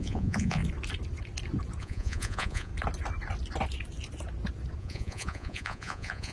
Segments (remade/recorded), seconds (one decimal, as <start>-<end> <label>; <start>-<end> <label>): 0.0-0.6 remade; 0.6-1.8 recorded; 1.8-2.7 remade; 2.7-4.8 recorded; 4.8-6.3 remade